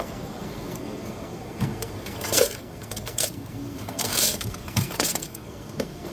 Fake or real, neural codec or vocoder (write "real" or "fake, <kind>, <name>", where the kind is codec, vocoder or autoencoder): fake, codec, SNAC